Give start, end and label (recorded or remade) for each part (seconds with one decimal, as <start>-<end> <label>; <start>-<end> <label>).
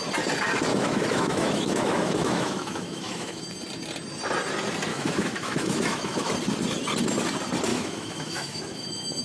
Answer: 0.0-0.7 recorded; 0.7-3.4 remade; 3.4-4.9 recorded; 4.9-6.3 remade; 6.3-7.7 recorded; 7.7-9.2 remade